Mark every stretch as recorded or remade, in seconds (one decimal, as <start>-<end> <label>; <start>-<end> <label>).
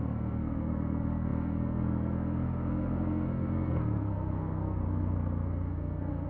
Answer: 0.0-6.3 remade